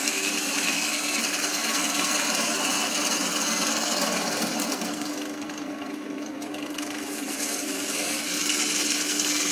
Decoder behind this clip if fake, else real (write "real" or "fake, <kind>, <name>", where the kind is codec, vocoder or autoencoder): fake, codec, SNAC